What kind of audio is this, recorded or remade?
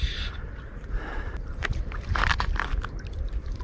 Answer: remade